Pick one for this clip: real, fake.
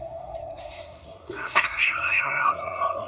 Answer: fake